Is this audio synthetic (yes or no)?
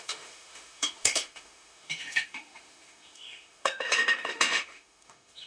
yes